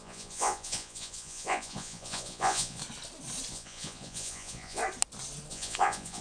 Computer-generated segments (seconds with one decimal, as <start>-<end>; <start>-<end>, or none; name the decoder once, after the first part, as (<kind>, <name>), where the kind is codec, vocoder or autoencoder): 0.0-2.8 (vocoder, Vocos); 3.5-4.8; 5.5-6.2